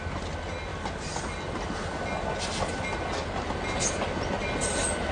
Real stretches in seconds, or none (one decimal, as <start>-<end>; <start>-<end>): 0.0-5.1